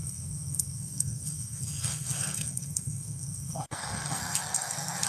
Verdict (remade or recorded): remade